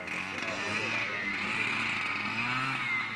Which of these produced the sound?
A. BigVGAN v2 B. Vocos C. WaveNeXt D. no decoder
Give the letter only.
D